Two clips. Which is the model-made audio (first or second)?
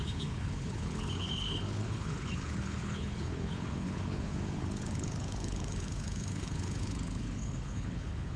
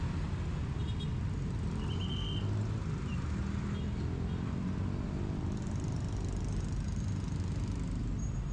first